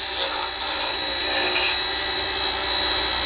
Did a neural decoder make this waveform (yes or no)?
no